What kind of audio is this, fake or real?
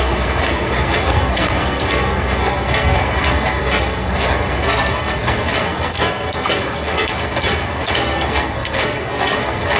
fake